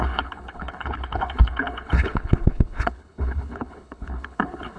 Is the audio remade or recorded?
remade